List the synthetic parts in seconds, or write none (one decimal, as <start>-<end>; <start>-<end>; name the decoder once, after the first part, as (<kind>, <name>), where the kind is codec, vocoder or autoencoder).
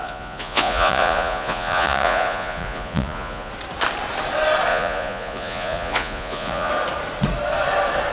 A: 0.0-3.5 (vocoder, Vocos); 4.7-6.7